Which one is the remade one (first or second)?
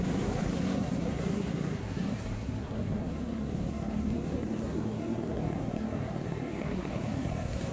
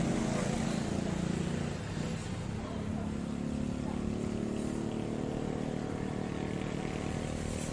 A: first